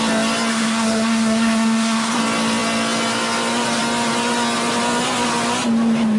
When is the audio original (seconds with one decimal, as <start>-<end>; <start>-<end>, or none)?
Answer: 0.0-0.5; 2.2-6.2